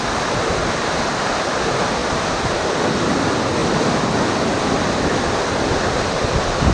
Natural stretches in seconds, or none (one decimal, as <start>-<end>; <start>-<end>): 0.0-2.0; 2.6-3.6; 5.9-6.7